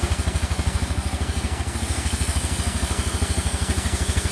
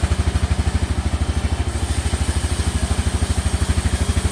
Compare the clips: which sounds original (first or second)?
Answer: second